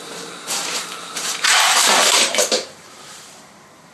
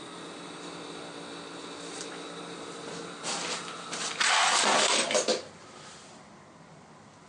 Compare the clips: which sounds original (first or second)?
second